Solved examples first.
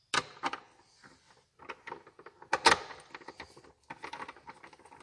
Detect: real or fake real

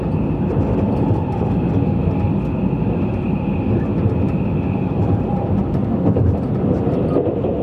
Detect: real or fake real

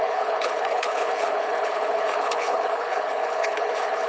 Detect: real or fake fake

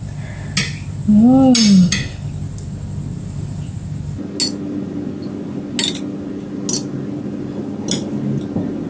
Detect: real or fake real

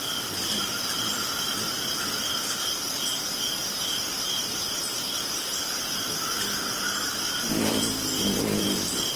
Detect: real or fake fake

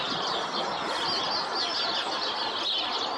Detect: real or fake real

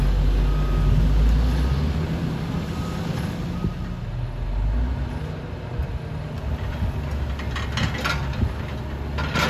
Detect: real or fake real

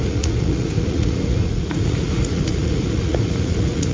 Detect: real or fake fake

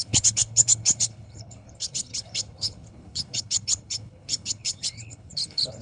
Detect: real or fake fake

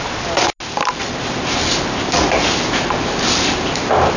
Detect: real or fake real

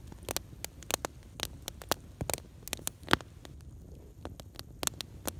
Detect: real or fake real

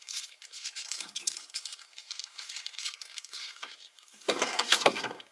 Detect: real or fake fake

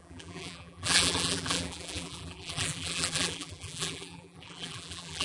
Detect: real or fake fake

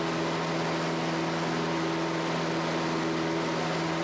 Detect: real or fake real